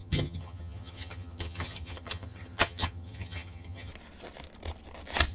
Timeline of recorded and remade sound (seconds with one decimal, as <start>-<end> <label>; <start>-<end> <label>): 0.0-3.9 remade; 3.9-5.3 recorded